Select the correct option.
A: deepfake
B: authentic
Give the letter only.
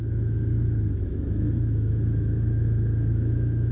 A